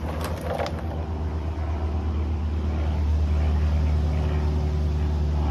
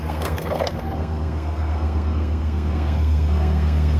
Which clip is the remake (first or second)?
second